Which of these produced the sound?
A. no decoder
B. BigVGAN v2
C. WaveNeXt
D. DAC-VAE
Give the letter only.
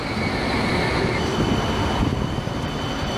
A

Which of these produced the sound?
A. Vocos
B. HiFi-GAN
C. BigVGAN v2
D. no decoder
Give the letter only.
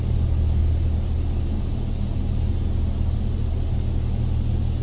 D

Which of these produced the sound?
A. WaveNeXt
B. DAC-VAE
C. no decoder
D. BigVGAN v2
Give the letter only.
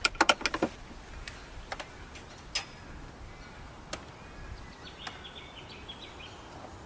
C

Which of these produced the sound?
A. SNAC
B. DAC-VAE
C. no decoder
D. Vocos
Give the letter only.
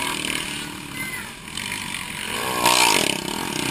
C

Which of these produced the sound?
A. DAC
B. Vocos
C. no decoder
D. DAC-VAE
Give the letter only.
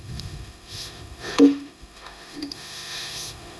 D